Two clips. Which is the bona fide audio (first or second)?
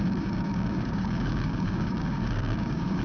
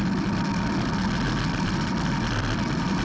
second